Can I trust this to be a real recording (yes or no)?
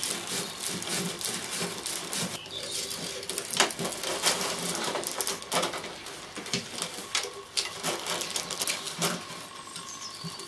yes